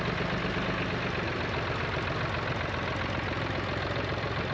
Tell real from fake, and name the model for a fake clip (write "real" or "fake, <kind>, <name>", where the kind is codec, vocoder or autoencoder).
real